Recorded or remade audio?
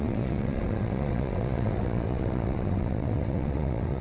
remade